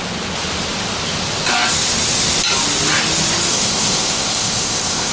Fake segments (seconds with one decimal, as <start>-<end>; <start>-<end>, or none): 3.5-5.1